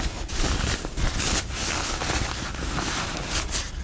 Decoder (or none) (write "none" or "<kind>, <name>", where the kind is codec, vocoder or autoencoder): none